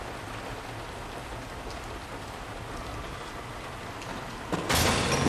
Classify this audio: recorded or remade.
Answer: recorded